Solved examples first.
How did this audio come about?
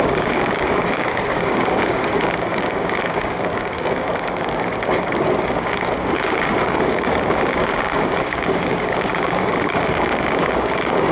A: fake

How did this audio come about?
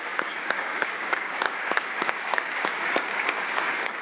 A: fake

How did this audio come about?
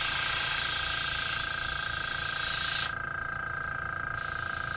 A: real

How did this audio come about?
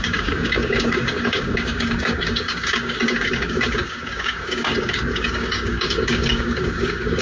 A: fake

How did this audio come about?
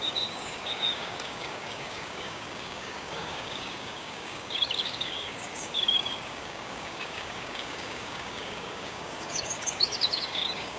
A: fake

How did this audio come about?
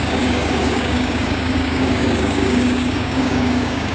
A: fake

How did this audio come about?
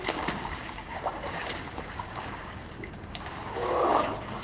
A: fake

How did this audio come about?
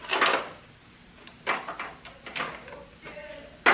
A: real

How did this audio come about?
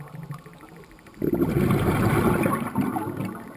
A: real